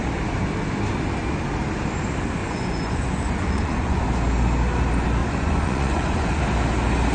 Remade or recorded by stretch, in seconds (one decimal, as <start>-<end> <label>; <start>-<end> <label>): 0.0-2.4 recorded; 2.4-4.0 remade; 4.0-5.2 recorded; 5.2-6.4 remade; 6.4-7.1 recorded